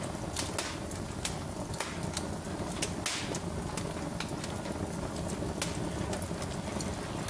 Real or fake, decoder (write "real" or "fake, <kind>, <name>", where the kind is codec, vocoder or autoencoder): real